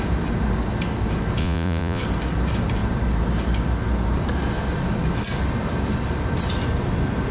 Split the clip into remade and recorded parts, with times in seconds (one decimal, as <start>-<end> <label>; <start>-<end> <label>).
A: 0.0-1.4 recorded; 1.4-2.0 remade; 2.0-7.3 recorded